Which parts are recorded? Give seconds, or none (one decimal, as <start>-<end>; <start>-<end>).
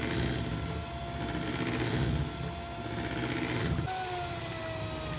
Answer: 0.0-5.2